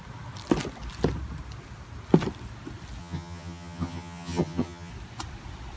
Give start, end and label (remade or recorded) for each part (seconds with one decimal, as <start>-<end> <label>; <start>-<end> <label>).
0.0-3.0 recorded; 3.0-4.9 remade; 4.9-5.8 recorded